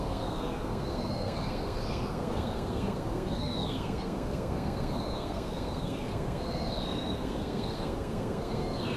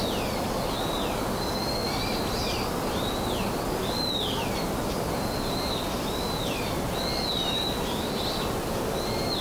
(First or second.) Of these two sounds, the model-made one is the first